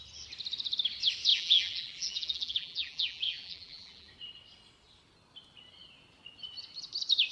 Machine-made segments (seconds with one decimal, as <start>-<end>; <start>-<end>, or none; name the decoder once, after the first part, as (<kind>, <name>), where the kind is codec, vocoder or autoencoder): 1.3-4.1 (vocoder, BigVGAN v2)